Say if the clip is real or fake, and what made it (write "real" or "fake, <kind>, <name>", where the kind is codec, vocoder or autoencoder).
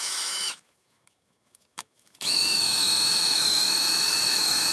fake, autoencoder, DAC-VAE